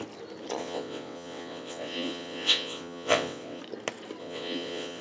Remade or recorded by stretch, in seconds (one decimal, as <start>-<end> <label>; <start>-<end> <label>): 0.0-0.6 recorded; 0.6-3.6 remade; 3.6-4.2 recorded; 4.2-5.0 remade